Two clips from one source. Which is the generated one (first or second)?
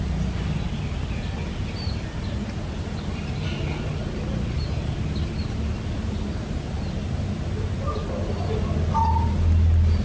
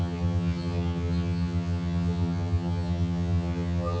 second